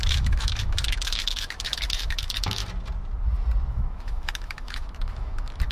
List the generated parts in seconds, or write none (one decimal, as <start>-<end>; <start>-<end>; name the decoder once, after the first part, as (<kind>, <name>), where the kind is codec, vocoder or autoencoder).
0.0-2.6 (autoencoder, DAC-VAE); 3.7-5.7